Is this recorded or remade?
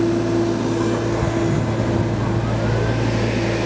recorded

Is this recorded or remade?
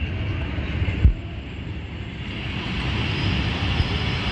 recorded